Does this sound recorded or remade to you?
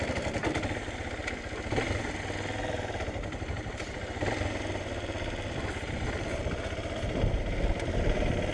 recorded